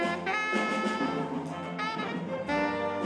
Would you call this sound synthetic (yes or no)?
no